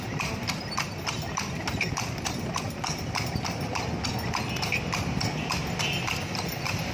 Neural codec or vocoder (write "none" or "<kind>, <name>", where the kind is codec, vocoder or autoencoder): none